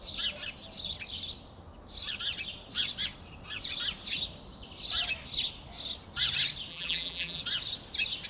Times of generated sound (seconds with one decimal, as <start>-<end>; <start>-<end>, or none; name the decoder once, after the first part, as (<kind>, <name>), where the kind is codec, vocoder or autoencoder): 6.7-7.4 (vocoder, BigVGAN v2)